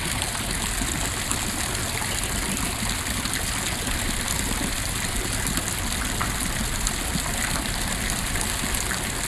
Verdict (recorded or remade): recorded